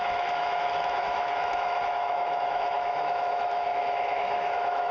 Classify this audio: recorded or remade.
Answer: remade